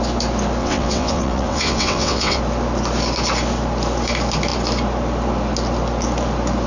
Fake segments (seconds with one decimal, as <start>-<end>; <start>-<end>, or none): 0.6-2.4